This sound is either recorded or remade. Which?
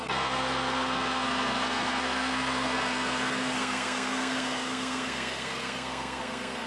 remade